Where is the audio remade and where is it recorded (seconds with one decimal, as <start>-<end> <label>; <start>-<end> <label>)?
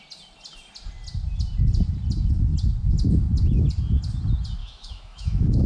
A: 0.0-4.6 recorded; 4.6-5.7 remade